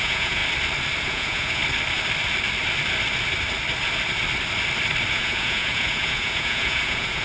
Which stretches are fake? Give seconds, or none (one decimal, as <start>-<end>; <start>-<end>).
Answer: 0.0-0.4; 1.0-1.6; 5.1-7.2